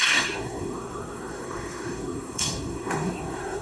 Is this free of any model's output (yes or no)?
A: no